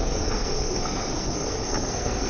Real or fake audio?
fake